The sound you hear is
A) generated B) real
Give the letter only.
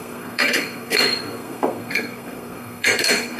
A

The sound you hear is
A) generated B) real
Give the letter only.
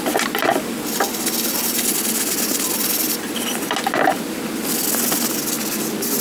B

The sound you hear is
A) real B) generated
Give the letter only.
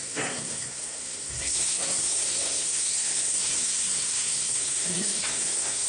B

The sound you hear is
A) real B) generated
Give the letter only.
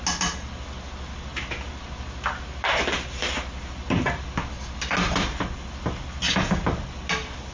A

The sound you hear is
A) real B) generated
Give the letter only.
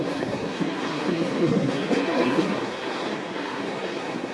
B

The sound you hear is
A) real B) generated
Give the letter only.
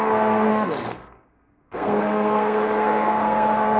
B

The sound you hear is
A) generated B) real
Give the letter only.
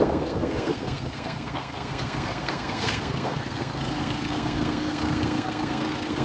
A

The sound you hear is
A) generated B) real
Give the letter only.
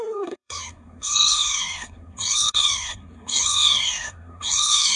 A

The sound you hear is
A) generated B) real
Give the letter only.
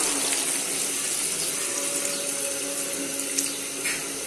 B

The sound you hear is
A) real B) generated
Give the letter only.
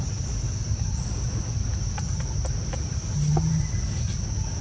A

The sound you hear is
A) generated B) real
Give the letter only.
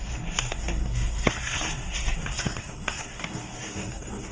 A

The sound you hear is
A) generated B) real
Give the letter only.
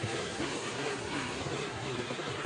A